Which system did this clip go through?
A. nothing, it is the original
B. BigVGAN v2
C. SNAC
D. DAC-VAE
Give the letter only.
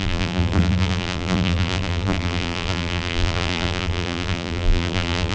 B